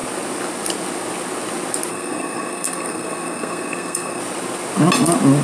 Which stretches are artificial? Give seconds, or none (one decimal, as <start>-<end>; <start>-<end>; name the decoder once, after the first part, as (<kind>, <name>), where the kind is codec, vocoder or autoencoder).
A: 1.9-4.2 (codec, SNAC)